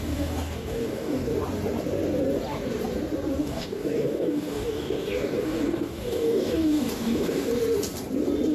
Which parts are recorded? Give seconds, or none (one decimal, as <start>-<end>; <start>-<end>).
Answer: 1.3-3.4; 7.5-8.5